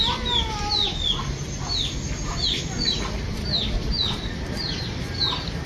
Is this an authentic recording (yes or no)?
yes